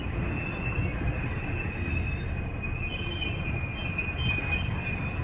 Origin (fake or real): real